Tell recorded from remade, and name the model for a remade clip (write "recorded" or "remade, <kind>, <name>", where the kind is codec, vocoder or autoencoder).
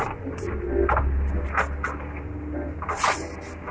recorded